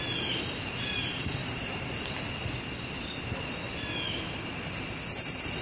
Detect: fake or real real